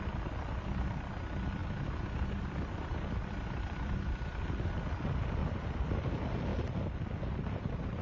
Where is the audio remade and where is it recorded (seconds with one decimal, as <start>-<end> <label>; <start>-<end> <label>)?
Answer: 0.0-1.6 recorded; 1.6-4.7 remade; 4.7-5.4 recorded; 5.4-6.1 remade; 6.1-8.0 recorded